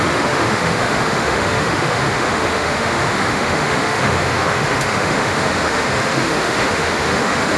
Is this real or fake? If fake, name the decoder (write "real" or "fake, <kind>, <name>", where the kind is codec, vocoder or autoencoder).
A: fake, autoencoder, DAC-VAE